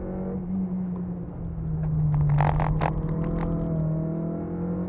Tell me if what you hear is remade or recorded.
recorded